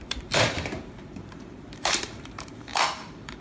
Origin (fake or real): fake